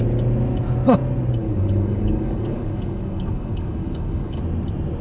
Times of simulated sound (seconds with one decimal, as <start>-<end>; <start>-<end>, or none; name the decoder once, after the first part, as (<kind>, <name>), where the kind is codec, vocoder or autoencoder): 1.4-4.4 (codec, DAC)